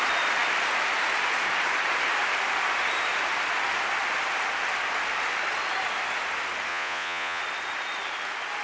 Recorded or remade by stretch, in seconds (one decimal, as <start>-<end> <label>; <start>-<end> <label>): 0.0-6.7 recorded; 6.7-7.4 remade; 7.4-8.6 recorded